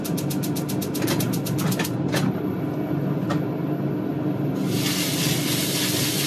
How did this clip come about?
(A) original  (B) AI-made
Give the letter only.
A